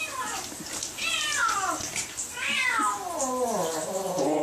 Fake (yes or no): no